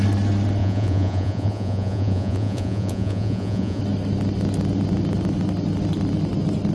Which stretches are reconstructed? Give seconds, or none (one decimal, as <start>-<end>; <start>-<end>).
0.6-3.8